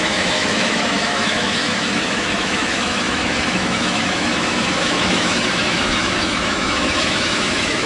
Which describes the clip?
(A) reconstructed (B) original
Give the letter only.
A